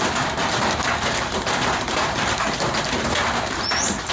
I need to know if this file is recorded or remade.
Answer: recorded